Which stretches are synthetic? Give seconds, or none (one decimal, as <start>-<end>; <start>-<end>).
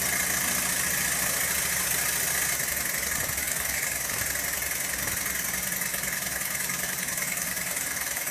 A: 3.4-4.2; 5.9-8.3